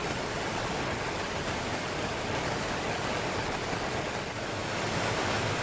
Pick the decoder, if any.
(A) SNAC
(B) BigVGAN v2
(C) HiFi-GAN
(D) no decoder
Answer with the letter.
D